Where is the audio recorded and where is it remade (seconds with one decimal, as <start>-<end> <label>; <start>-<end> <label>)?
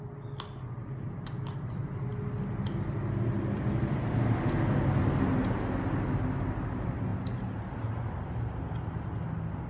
0.0-9.7 recorded